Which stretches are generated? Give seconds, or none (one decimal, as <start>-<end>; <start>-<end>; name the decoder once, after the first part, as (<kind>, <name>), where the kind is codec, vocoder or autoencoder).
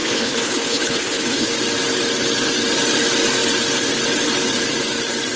0.0-1.5 (codec, HILCodec)